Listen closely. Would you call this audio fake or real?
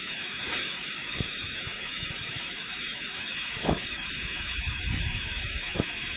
fake